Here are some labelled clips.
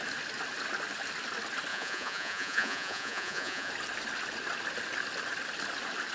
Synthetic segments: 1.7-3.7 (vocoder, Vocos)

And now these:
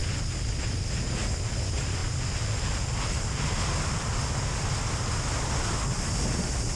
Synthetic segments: 2.0-4.7 (vocoder, BigVGAN v2)